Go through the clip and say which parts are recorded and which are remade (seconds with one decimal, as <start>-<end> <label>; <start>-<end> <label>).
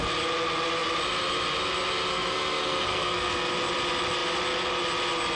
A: 0.0-2.1 recorded; 2.1-3.5 remade; 3.5-5.4 recorded